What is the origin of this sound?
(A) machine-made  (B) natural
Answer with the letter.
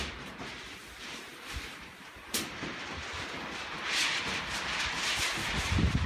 B